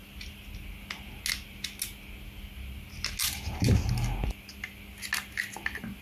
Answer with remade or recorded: recorded